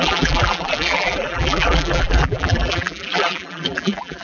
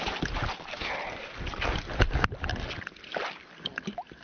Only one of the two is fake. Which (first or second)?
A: first